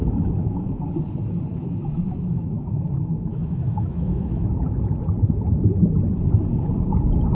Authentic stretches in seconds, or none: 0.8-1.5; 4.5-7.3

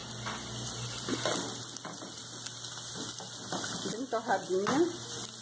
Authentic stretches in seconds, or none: 0.0-5.4

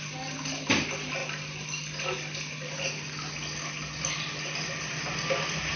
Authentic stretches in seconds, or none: 0.0-5.8